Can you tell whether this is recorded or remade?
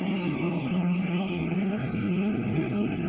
remade